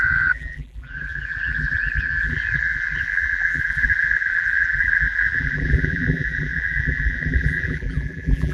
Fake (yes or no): yes